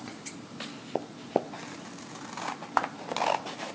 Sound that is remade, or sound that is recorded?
recorded